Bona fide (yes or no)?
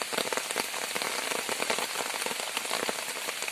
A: yes